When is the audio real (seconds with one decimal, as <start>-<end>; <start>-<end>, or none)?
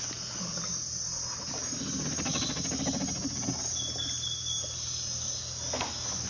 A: 0.0-6.3